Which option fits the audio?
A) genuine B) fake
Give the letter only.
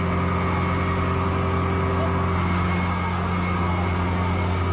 A